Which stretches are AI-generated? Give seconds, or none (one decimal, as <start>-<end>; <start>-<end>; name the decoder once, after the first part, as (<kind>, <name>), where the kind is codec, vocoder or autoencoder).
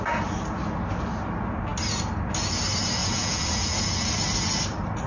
3.0-4.1 (vocoder, Vocos)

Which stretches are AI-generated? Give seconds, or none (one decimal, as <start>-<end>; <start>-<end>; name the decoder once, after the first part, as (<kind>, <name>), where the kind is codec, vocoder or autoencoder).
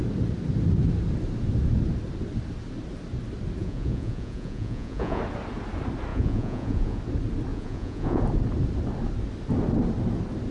3.6-5.2 (vocoder, Vocos); 6.1-7.0; 7.5-8.2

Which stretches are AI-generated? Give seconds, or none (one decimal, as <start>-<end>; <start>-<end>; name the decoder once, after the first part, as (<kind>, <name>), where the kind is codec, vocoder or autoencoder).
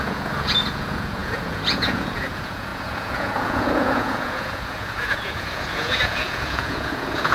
0.0-7.3 (vocoder, Vocos)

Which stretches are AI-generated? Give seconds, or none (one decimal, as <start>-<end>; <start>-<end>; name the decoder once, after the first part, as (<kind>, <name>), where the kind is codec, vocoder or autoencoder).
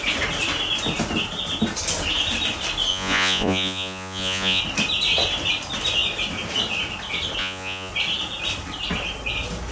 2.9-4.6 (vocoder, Vocos); 7.4-7.9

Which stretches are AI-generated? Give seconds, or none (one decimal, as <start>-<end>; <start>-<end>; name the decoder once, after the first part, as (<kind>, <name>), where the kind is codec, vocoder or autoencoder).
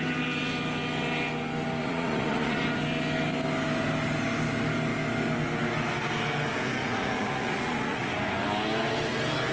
1.8-2.6 (vocoder, Vocos); 6.8-8.1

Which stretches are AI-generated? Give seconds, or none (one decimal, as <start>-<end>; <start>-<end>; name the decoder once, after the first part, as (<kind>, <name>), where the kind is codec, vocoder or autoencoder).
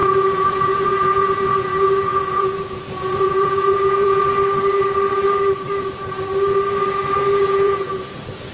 0.0-4.2 (vocoder, Vocos); 7.4-8.5